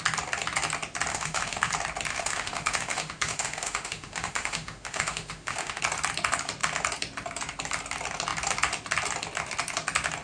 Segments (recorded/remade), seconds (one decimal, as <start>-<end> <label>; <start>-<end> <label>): 0.0-1.1 recorded; 1.1-1.7 remade; 1.7-2.1 recorded; 2.1-5.8 remade; 5.8-10.2 recorded